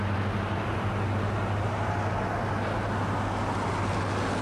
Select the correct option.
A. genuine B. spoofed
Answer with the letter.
A